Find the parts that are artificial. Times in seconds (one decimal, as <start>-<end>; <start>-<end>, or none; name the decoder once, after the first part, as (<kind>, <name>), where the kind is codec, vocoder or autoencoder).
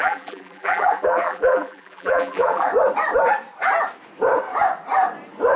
0.0-2.7 (vocoder, BigVGAN v2)